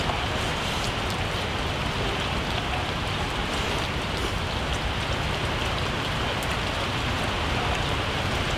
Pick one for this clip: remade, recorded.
recorded